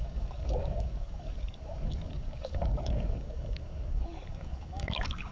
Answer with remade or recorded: remade